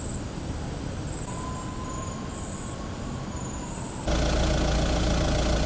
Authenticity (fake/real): real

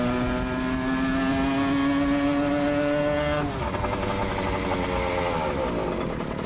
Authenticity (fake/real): real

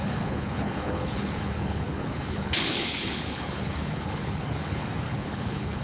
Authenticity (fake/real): fake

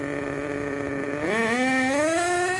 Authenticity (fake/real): real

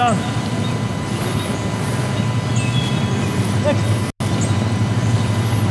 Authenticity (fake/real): real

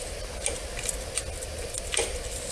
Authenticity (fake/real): real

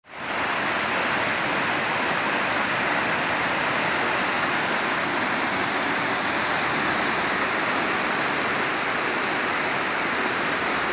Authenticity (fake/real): real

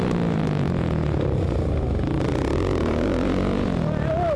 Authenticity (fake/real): real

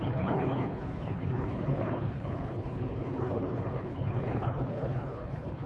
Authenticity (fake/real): fake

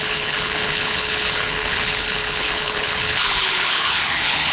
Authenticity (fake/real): fake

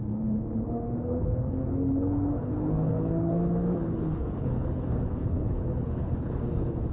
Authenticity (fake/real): fake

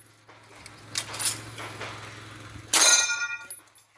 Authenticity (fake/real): real